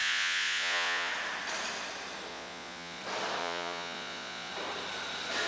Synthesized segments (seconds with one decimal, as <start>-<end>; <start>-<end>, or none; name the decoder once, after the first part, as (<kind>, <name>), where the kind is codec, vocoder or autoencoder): 0.0-1.1 (vocoder, Vocos); 2.3-3.0; 3.4-4.5